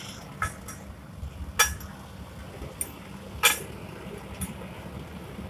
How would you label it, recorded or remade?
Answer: recorded